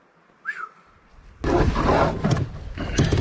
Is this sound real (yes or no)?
yes